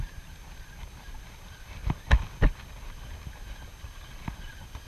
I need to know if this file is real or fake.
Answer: real